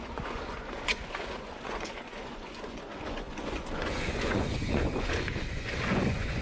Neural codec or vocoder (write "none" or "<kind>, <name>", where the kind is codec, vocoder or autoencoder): vocoder, Vocos